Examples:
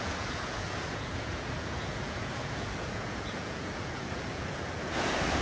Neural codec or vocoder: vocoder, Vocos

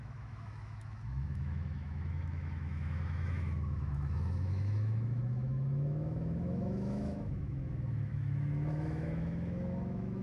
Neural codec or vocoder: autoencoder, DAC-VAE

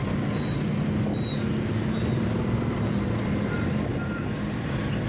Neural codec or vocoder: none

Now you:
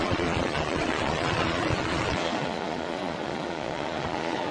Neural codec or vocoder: vocoder, Vocos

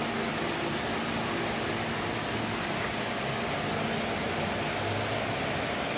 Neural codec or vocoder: none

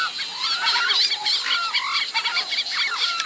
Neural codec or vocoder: none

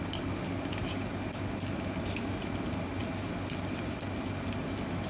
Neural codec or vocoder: none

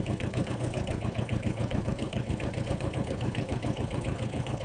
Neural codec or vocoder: codec, HILCodec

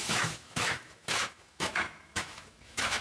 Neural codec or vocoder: autoencoder, DAC-VAE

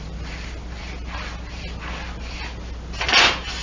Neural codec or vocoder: none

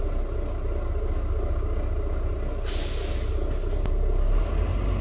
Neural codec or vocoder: none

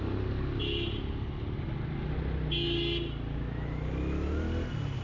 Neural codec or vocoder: none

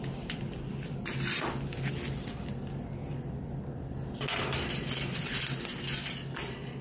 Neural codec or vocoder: none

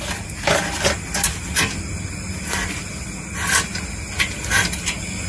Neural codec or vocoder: none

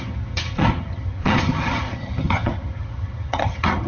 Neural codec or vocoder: vocoder, HiFi-GAN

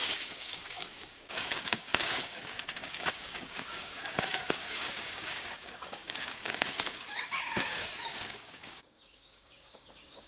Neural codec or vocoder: codec, DAC